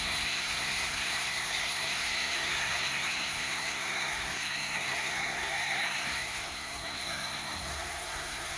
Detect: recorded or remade remade